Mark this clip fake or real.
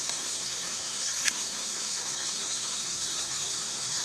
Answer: fake